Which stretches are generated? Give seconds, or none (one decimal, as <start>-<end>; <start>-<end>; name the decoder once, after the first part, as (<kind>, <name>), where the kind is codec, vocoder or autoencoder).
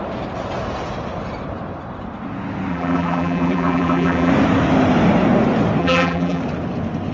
2.7-4.3 (vocoder, BigVGAN v2); 5.8-6.4